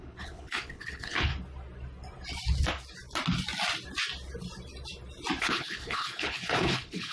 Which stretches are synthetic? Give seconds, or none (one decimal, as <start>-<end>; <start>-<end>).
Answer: 0.0-1.3; 5.4-7.1